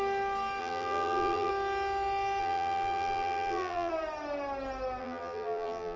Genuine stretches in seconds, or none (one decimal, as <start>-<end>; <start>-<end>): 0.0-0.6; 1.5-2.4; 3.9-5.0

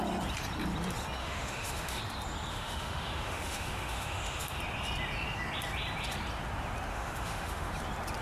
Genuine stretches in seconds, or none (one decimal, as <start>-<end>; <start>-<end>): 0.0-1.2; 2.0-2.5; 4.6-6.9; 7.7-8.2

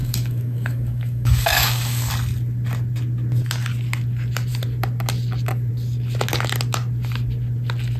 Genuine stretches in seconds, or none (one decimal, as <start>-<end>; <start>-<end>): 2.1-8.0

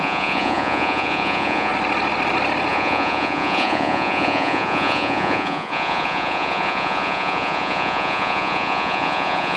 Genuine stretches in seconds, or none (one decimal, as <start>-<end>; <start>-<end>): 1.7-2.7